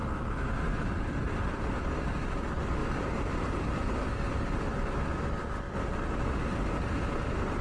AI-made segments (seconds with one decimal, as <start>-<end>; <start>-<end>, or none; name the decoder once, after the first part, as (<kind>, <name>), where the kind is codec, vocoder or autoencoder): 2.8-4.0 (vocoder, BigVGAN v2); 6.5-7.6